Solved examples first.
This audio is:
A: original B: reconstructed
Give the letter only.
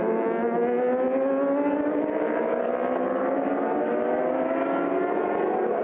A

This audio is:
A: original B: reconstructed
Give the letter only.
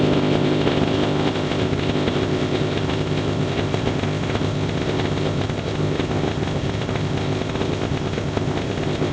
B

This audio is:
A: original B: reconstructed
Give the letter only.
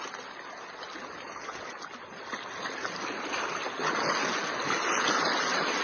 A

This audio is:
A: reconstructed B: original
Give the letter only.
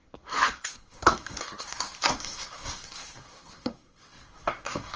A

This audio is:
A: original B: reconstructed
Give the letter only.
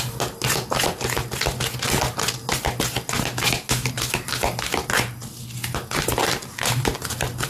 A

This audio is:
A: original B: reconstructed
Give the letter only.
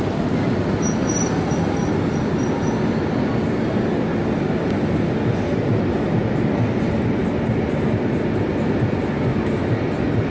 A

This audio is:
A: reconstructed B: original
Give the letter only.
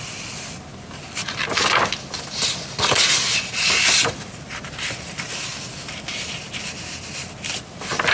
B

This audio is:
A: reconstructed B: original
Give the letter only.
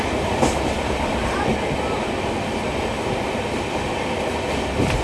B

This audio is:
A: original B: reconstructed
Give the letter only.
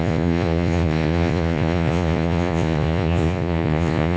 B